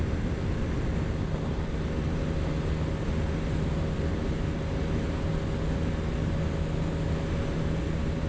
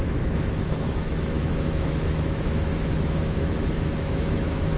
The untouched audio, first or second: first